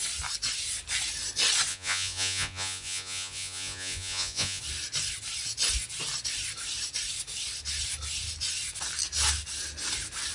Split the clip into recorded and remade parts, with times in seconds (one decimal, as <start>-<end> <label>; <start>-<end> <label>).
0.0-1.7 recorded; 1.7-4.6 remade; 4.6-10.3 recorded